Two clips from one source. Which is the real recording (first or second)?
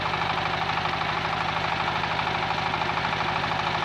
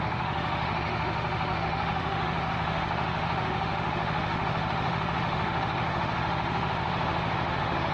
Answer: first